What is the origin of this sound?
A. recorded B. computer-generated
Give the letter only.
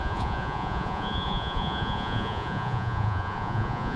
B